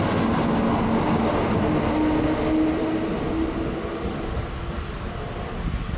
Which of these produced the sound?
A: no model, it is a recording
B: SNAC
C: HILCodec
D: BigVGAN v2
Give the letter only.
A